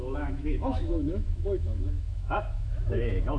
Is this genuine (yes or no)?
no